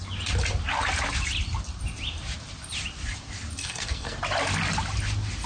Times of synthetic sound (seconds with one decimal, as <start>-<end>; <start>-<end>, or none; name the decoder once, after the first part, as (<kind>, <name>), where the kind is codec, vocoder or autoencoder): 3.6-4.2 (codec, SNAC)